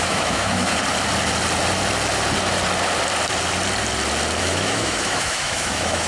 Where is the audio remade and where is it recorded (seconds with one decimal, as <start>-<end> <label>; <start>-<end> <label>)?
0.0-0.7 remade; 0.7-4.4 recorded; 4.4-6.1 remade